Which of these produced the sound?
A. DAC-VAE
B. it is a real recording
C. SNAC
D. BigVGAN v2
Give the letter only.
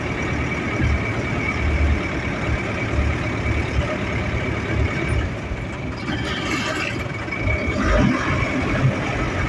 B